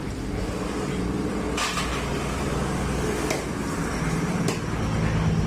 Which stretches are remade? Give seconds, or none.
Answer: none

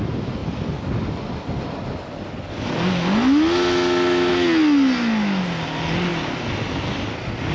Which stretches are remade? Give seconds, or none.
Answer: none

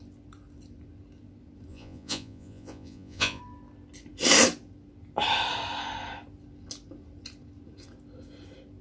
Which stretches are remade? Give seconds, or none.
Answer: 1.7-3.4 (vocoder, Vocos)